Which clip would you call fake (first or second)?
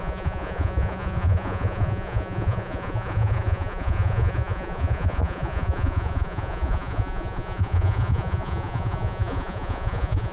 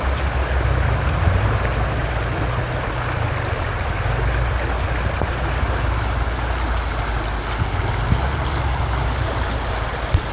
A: first